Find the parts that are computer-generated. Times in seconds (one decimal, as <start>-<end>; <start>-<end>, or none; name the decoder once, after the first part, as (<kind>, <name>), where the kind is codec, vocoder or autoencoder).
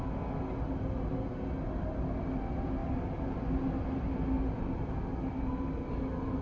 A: none